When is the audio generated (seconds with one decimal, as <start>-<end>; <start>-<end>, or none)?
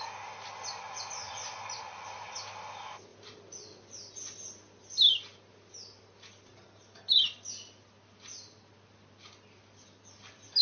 none